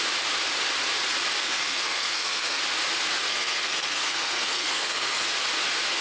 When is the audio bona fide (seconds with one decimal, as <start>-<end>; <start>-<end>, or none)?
0.0-1.4; 2.6-3.3; 5.3-6.0